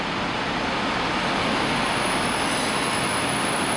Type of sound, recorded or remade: recorded